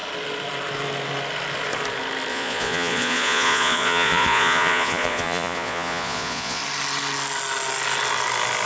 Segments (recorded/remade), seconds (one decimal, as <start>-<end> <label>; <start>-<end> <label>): 0.0-2.3 recorded; 2.3-6.6 remade; 6.6-8.7 recorded